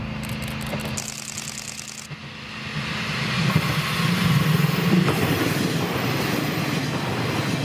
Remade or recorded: recorded